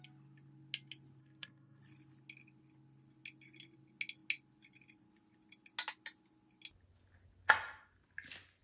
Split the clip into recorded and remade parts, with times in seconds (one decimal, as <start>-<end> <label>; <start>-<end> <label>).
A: 0.0-1.2 recorded; 1.2-1.8 remade; 1.8-8.6 recorded